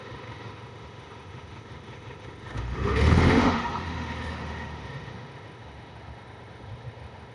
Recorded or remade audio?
remade